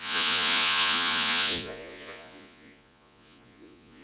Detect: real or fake fake